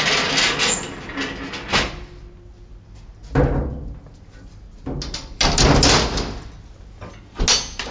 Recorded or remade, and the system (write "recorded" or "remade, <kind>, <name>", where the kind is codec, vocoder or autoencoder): recorded